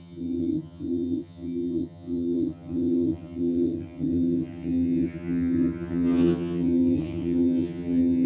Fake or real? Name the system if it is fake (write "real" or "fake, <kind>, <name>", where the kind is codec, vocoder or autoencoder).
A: fake, vocoder, HiFi-GAN